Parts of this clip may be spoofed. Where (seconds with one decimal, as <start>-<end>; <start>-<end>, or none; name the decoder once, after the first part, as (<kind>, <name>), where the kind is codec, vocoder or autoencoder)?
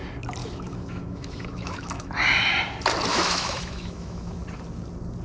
0.4-2.1 (autoencoder, DAC-VAE); 3.1-4.3